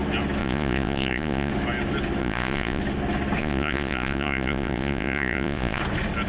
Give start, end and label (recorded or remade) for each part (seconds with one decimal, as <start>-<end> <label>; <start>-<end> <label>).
0.0-0.4 recorded; 0.4-1.5 remade; 1.5-2.2 recorded; 2.2-2.8 remade; 2.8-3.4 recorded; 3.4-5.8 remade; 5.8-6.3 recorded